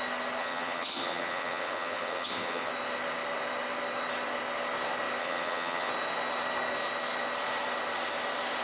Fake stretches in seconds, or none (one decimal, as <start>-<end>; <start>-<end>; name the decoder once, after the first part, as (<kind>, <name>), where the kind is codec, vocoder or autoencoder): 0.4-2.7 (vocoder, HiFi-GAN); 5.2-5.9